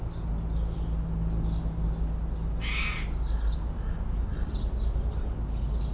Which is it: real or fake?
real